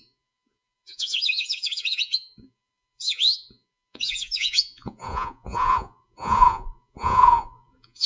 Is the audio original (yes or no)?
no